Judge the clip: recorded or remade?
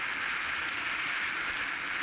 recorded